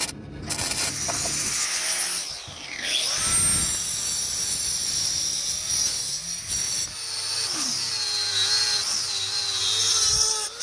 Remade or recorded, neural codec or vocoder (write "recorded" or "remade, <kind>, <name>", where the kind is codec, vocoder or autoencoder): recorded